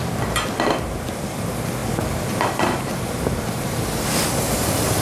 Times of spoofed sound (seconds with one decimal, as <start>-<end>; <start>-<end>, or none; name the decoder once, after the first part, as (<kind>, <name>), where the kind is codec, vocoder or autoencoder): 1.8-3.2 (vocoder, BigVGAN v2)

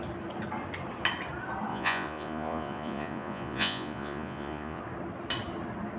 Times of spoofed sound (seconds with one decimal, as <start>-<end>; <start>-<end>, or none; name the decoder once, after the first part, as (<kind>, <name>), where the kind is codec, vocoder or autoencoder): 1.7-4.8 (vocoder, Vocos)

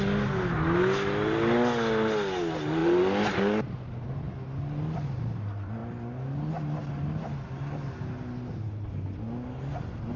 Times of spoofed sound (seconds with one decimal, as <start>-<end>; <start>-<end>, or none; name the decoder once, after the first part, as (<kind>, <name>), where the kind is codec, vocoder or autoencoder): none

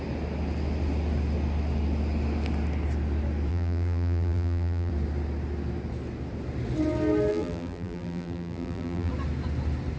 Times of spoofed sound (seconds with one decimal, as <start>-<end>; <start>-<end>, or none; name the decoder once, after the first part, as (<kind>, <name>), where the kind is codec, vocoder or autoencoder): 3.5-4.9 (vocoder, BigVGAN v2); 7.3-9.1

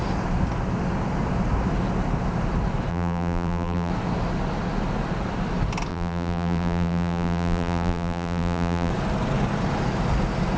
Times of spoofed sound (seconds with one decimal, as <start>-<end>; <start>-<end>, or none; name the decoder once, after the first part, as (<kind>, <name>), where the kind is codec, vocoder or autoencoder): 2.9-3.9 (vocoder, BigVGAN v2); 5.9-8.9